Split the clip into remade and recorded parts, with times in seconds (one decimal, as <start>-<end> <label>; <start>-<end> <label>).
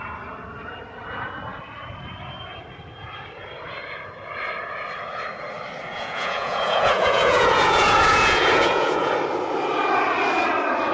0.0-5.9 recorded; 5.9-9.1 remade; 9.1-10.9 recorded